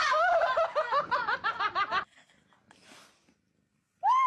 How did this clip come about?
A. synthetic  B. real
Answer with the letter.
B